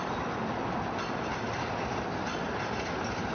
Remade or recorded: recorded